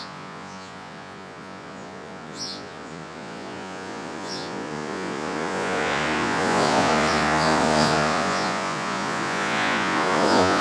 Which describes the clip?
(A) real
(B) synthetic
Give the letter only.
B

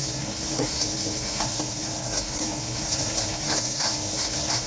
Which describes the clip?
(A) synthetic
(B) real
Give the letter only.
A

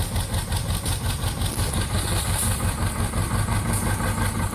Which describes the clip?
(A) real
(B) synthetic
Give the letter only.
A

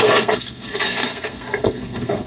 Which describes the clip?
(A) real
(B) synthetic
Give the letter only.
B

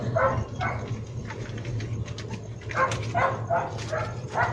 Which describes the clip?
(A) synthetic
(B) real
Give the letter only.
B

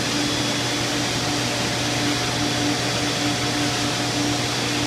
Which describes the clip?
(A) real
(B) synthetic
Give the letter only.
A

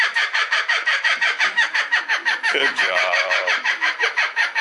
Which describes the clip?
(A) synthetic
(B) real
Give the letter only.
A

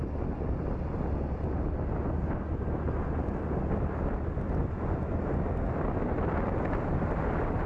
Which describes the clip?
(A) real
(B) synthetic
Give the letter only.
A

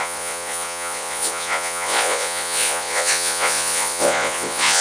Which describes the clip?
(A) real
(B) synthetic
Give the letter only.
B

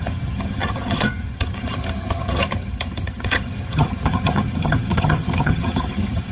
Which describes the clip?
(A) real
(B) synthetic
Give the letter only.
B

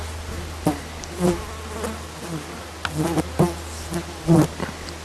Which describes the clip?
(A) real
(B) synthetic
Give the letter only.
A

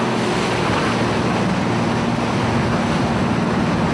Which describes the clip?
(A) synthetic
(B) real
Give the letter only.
B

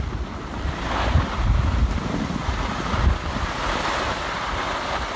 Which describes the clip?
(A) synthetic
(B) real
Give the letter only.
B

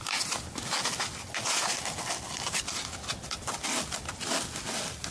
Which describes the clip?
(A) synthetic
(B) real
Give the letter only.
B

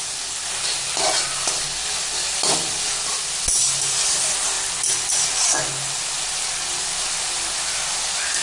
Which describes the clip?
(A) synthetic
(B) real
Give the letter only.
B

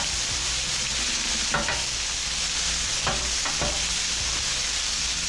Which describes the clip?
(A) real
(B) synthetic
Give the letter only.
A